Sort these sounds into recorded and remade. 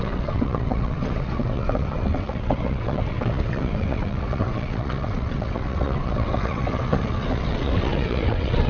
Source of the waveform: remade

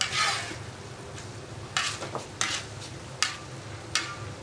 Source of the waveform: recorded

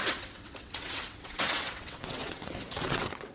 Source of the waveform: remade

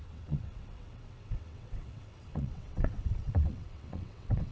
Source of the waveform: remade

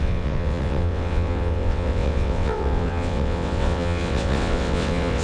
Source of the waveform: remade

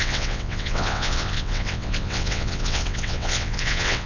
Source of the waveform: remade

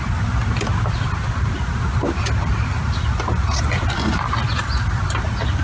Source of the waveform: recorded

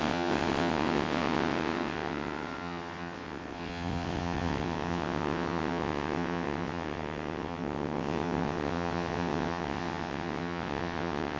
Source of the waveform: remade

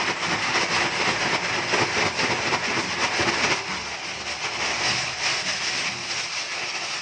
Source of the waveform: recorded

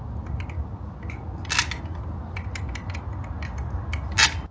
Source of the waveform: recorded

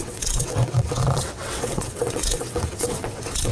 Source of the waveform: remade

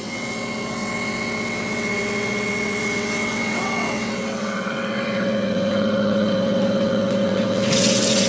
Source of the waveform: remade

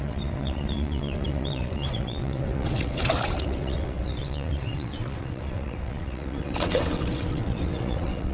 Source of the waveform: remade